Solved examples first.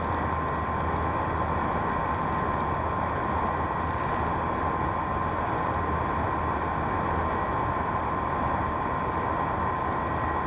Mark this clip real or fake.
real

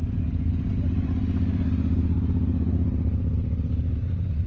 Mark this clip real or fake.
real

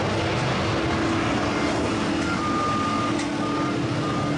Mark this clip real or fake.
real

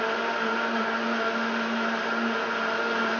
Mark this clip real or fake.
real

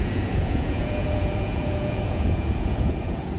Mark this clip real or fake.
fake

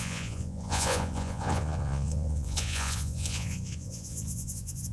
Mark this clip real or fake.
fake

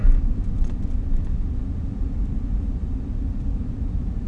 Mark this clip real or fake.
real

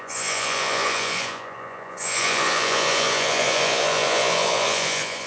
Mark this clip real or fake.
fake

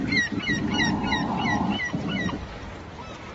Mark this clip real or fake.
real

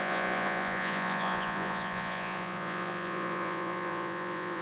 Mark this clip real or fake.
fake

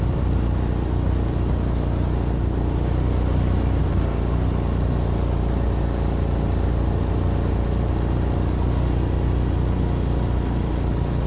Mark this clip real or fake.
real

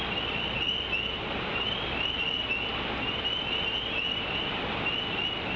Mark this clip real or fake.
real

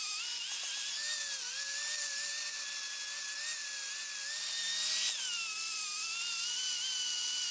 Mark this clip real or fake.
real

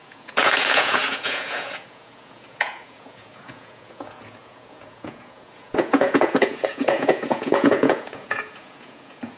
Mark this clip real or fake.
fake